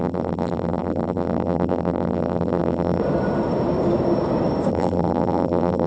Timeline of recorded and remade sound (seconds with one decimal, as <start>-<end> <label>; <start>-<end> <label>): 0.0-3.0 remade; 3.0-4.7 recorded; 4.7-5.9 remade